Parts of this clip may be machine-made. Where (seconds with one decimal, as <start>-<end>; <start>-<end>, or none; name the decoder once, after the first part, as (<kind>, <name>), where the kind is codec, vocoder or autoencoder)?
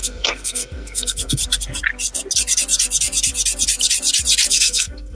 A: 0.0-1.4 (codec, SNAC); 4.5-5.2